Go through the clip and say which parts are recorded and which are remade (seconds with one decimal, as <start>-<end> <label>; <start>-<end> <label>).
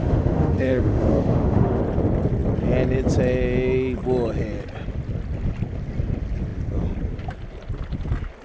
0.0-1.8 remade; 1.8-8.4 recorded